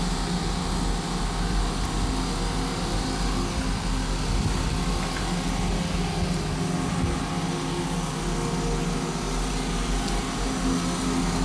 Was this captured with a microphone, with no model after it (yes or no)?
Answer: yes